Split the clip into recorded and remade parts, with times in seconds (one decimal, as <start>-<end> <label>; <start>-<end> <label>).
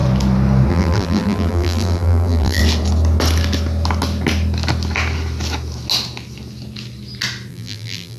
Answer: 0.0-0.7 recorded; 0.7-2.6 remade; 2.6-7.5 recorded; 7.5-8.2 remade